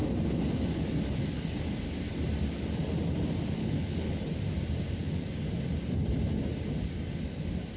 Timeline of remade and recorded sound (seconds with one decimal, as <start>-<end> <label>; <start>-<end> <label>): 0.0-3.6 recorded; 3.6-4.2 remade; 4.2-7.8 recorded